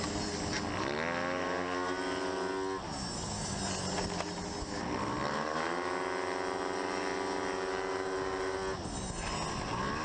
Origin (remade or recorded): recorded